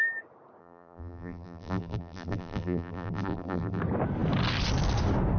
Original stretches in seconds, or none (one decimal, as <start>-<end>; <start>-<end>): 0.0-0.6; 3.8-5.4